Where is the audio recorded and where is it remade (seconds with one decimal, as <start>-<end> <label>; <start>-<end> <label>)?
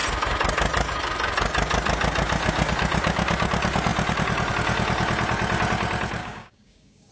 0.0-6.2 recorded; 6.2-7.1 remade